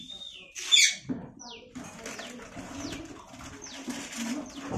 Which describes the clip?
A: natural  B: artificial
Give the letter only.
A